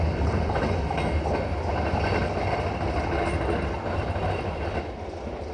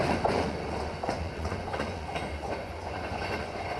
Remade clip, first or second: second